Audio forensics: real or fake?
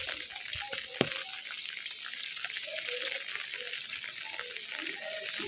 real